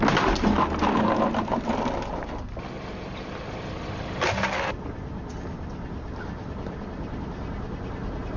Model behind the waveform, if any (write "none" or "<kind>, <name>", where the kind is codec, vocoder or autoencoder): none